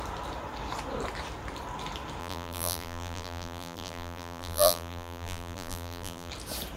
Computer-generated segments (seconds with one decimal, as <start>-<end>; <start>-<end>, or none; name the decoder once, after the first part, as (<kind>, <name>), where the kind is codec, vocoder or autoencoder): 2.2-6.3 (vocoder, BigVGAN v2)